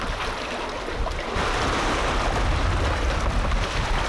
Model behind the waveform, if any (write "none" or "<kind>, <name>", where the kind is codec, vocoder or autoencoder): none